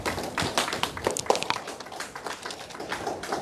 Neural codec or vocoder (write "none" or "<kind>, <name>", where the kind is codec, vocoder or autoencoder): none